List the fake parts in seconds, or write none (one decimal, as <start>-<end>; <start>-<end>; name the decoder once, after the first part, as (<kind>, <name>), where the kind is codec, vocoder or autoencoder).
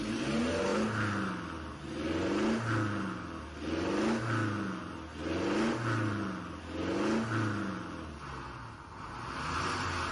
none